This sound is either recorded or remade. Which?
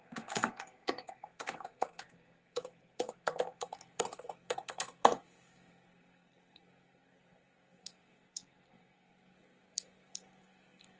remade